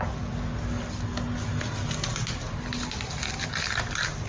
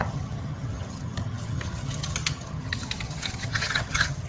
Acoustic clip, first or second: first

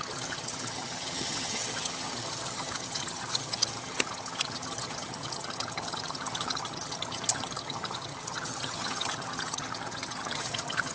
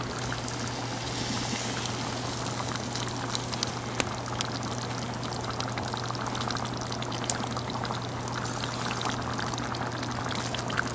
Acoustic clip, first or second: second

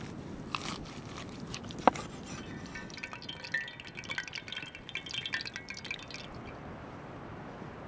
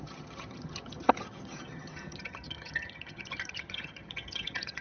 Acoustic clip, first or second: first